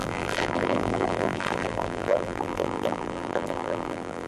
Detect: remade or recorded remade